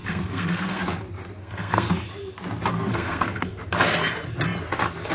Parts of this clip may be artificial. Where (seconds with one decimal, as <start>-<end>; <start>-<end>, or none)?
0.0-0.8; 1.4-1.9; 2.7-3.6